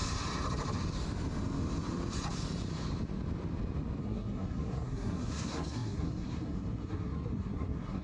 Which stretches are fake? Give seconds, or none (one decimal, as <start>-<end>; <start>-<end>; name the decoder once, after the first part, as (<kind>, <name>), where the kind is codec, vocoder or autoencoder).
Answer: 4.0-8.0 (codec, SNAC)